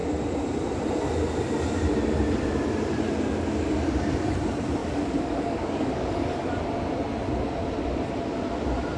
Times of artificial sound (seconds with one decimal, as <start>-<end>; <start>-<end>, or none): 4.8-6.6